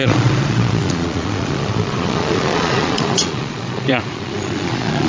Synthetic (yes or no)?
yes